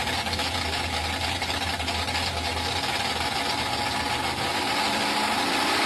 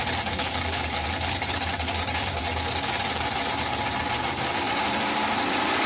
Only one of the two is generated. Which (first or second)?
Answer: second